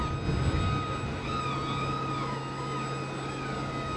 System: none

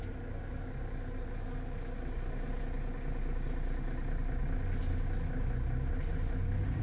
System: none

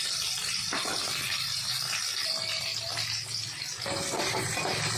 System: none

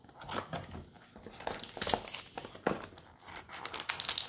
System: none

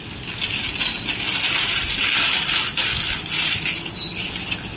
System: none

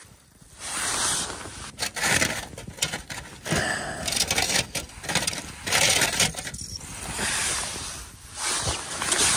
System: none